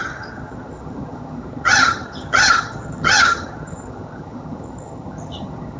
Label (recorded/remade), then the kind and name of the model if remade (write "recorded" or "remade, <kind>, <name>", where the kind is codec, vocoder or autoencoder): remade, vocoder, HiFi-GAN